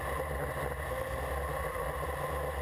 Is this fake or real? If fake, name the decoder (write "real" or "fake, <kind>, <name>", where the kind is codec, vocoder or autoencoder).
real